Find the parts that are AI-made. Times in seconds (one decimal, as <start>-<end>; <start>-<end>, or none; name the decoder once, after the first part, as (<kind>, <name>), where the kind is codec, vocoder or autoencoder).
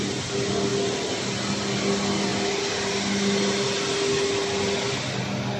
none